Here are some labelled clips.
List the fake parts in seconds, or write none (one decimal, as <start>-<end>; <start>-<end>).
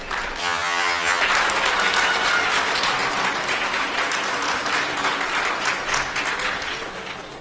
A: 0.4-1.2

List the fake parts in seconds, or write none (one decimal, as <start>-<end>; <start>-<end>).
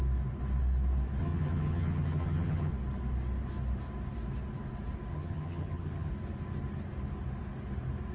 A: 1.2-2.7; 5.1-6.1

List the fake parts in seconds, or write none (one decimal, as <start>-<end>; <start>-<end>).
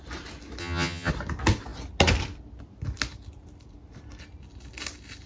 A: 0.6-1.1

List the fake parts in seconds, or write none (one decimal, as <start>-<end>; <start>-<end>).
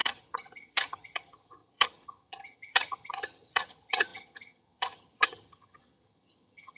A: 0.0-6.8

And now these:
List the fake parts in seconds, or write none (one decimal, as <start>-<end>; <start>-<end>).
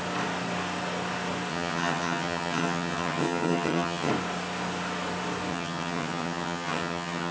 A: 1.5-4.1; 5.5-7.3